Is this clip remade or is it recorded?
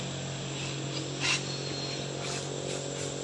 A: recorded